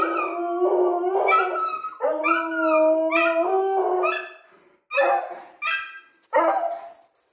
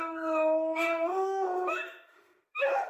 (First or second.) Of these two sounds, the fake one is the second